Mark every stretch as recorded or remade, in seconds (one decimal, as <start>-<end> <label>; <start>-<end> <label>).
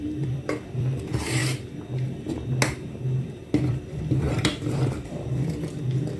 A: 0.0-1.4 remade; 1.4-3.7 recorded; 3.7-6.2 remade